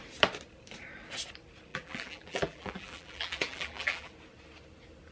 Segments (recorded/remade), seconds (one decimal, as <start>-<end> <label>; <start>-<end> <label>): 0.0-1.7 recorded; 1.7-4.1 remade; 4.1-5.1 recorded